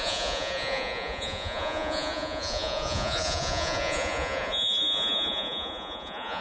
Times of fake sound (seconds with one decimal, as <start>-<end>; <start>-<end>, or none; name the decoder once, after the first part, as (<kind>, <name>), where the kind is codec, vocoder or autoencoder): 0.0-6.4 (vocoder, Vocos)